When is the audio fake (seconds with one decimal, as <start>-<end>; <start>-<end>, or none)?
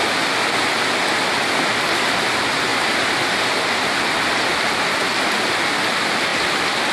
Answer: none